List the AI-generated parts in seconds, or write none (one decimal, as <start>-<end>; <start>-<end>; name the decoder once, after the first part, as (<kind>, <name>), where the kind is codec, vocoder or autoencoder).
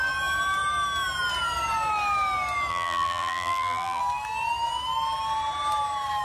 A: 2.7-4.0 (vocoder, BigVGAN v2)